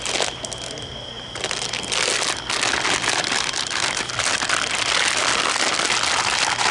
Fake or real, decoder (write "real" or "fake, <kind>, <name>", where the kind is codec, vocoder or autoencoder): real